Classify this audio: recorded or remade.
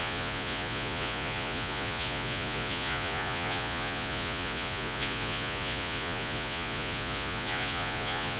remade